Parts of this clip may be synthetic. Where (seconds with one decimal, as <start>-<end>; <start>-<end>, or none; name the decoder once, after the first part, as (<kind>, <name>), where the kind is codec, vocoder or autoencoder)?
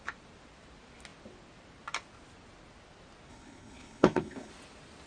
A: 3.3-4.5 (codec, HILCodec)